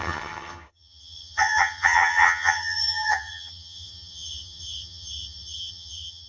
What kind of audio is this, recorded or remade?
remade